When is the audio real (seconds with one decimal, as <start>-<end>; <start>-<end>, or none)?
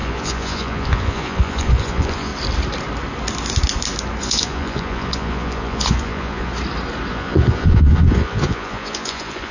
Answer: 2.3-4.2; 6.5-7.1